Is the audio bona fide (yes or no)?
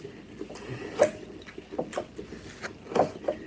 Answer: yes